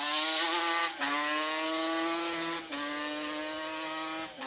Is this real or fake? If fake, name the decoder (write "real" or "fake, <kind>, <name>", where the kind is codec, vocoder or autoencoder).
real